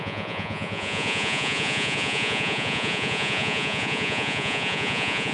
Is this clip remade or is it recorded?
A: remade